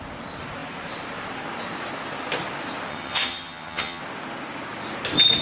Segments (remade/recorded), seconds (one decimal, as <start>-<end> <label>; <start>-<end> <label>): 0.0-2.9 recorded; 2.9-4.0 remade; 4.0-5.4 recorded